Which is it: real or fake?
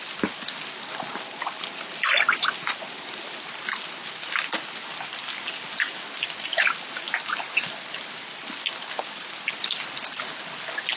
real